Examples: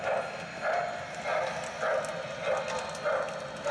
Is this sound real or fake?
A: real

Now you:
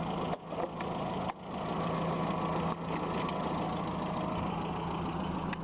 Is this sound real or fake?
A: real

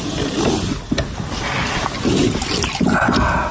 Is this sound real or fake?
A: real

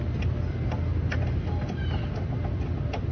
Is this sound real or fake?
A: real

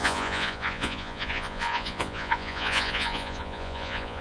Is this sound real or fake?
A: fake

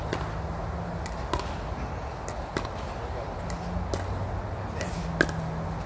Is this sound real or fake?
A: real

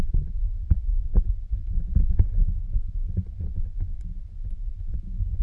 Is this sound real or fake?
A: fake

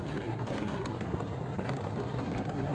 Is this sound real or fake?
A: fake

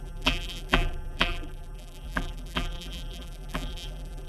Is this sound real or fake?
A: fake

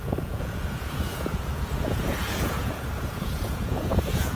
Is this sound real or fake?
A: fake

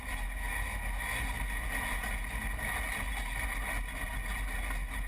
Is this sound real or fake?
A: real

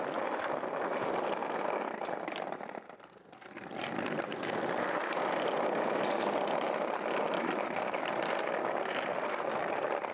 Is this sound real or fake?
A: fake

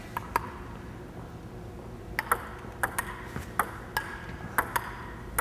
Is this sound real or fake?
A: real